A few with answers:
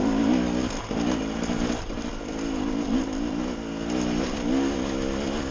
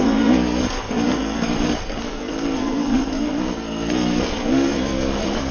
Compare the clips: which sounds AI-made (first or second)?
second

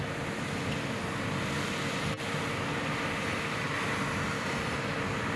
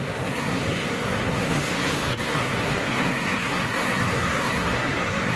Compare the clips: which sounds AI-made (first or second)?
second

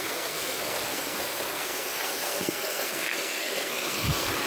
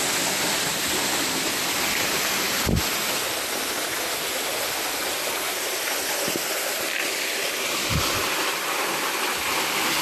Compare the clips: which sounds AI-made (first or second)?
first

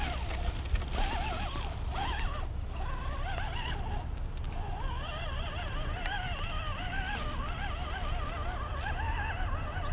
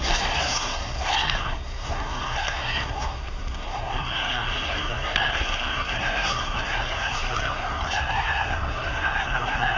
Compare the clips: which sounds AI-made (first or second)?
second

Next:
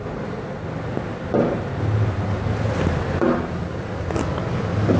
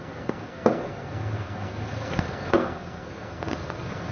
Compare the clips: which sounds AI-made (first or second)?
second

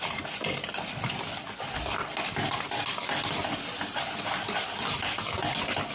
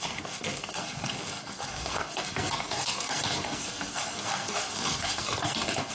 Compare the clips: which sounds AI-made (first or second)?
second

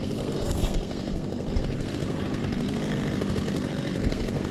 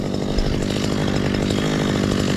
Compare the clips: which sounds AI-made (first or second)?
first